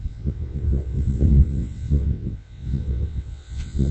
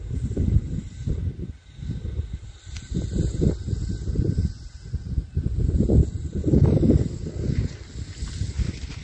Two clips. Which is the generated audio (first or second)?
first